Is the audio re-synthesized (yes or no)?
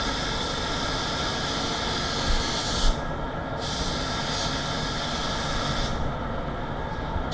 no